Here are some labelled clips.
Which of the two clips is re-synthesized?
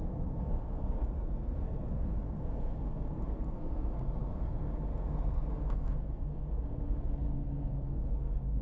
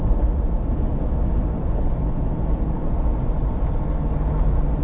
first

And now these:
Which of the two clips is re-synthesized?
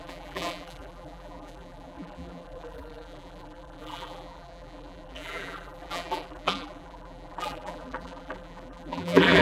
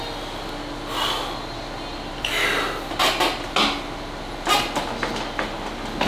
first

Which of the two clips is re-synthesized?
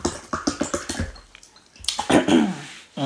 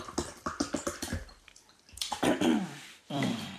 second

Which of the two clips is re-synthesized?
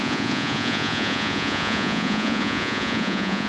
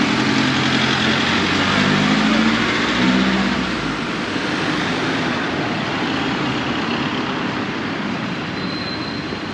first